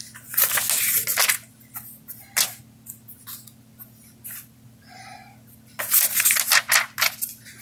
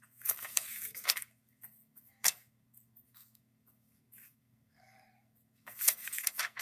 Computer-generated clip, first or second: second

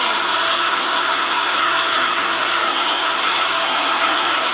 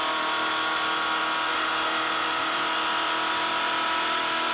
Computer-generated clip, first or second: first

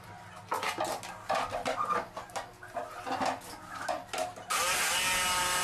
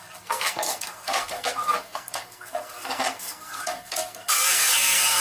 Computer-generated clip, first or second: second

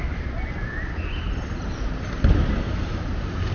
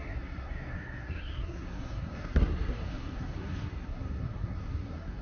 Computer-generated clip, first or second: second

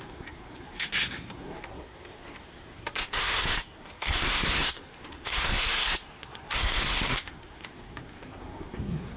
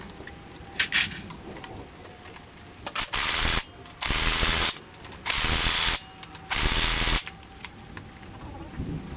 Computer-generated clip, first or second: first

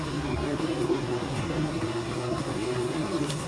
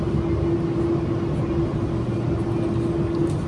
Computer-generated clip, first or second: first